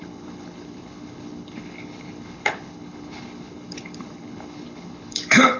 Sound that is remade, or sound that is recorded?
remade